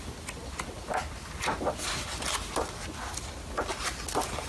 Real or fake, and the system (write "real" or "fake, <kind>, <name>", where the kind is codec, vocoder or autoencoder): real